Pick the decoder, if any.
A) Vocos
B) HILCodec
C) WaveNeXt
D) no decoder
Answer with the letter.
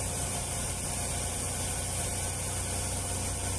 D